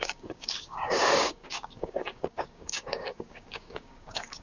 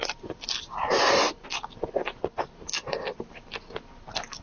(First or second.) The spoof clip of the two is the first